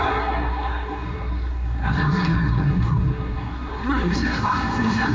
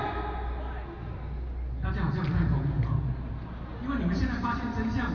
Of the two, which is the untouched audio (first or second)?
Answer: second